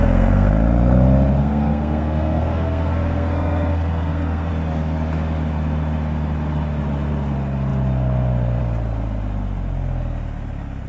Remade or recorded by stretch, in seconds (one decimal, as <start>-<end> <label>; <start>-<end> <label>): 0.0-0.5 remade; 0.5-1.4 recorded; 1.4-4.5 remade; 4.5-10.9 recorded